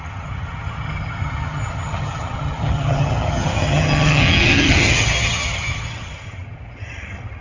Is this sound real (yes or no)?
no